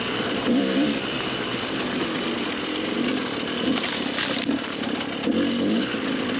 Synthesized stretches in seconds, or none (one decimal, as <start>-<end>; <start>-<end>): 0.0-1.5; 2.4-6.4